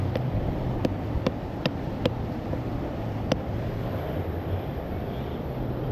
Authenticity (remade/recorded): remade